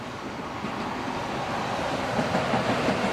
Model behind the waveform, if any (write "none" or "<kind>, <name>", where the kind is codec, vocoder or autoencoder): none